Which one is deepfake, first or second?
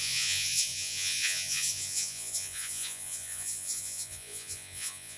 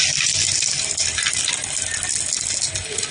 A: first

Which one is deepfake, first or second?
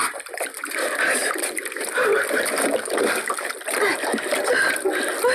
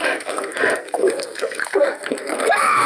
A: second